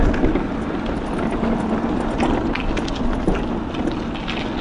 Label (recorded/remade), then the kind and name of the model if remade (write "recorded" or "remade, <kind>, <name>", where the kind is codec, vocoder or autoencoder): recorded